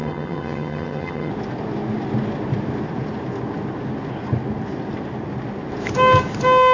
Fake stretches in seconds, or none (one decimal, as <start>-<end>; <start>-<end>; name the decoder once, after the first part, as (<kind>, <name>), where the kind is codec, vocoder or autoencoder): 0.0-1.3 (vocoder, HiFi-GAN)